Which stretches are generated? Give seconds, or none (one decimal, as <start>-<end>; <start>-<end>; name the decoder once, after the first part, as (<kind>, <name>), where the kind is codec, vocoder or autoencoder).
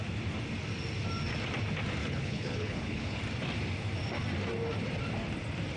2.0-3.2 (codec, HILCodec)